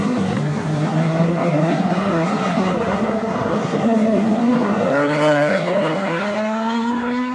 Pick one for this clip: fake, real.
fake